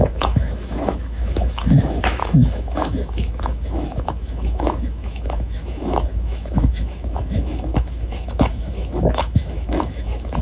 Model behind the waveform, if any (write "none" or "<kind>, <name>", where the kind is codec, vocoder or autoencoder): autoencoder, DAC-VAE